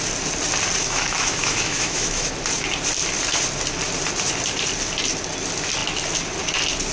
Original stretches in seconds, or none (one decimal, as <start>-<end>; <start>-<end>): 0.0-0.8; 2.3-6.9